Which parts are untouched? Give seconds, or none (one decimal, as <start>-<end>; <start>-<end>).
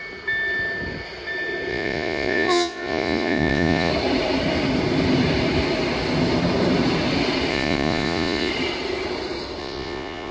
0.0-1.7; 3.9-7.5; 8.5-9.6